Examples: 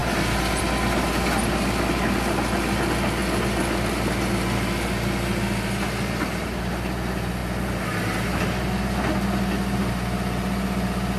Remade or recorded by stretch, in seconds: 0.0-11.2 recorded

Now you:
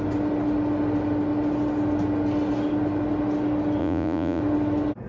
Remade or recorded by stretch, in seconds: 0.0-3.8 recorded; 3.8-4.4 remade; 4.4-5.1 recorded

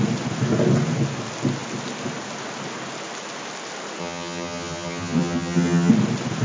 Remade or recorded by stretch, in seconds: 0.0-4.0 recorded; 4.0-5.9 remade; 5.9-6.4 recorded

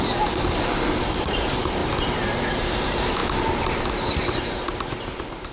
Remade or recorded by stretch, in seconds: 0.0-1.8 remade; 1.8-2.5 recorded; 2.5-3.2 remade; 3.2-5.0 recorded; 5.0-5.5 remade

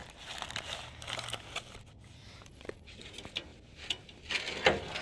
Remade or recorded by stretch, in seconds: 0.0-2.5 recorded; 2.5-3.1 remade; 3.1-5.0 recorded